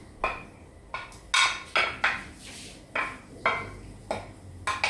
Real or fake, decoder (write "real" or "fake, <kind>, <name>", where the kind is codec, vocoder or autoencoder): real